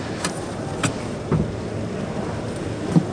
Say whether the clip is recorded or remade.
recorded